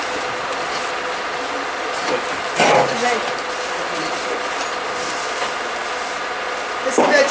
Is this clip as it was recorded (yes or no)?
yes